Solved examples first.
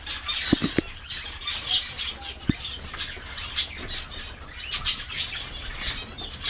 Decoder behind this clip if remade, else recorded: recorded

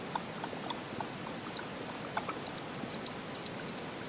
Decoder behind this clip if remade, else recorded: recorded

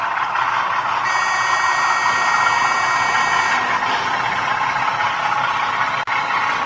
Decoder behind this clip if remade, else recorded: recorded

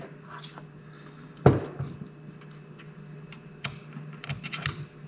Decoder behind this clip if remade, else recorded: recorded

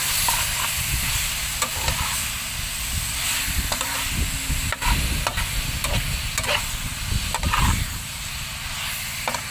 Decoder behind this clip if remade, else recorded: recorded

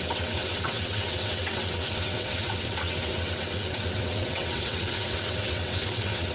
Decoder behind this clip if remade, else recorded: remade, vocoder, WaveNeXt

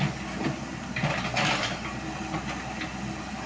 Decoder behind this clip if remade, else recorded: recorded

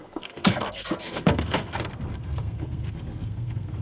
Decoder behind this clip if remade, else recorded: remade, codec, SNAC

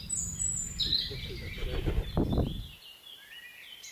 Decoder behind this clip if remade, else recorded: recorded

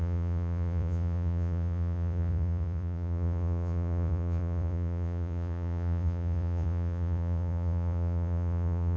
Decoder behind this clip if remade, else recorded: remade, vocoder, Vocos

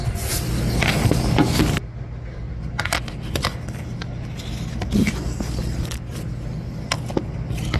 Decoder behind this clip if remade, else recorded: recorded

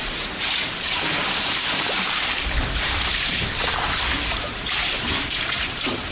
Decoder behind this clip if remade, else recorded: remade, vocoder, BigVGAN v2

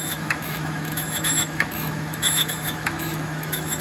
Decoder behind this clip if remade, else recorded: remade, autoencoder, DAC-VAE